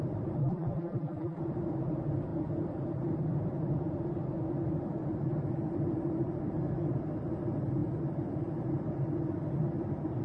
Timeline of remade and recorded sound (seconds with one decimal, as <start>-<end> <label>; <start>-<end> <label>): 0.0-0.4 recorded; 0.4-1.4 remade; 1.4-10.2 recorded